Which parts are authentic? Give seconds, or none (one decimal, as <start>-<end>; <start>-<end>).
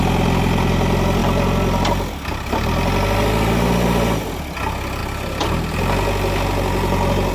0.0-7.3